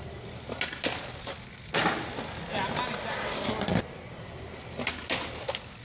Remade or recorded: recorded